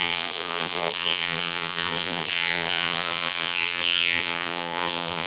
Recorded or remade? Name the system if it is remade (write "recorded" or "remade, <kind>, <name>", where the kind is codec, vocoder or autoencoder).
remade, vocoder, BigVGAN v2